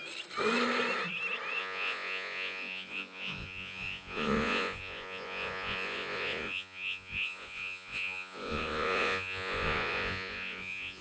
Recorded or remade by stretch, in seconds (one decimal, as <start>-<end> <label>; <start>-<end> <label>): 0.0-1.6 recorded; 1.6-11.0 remade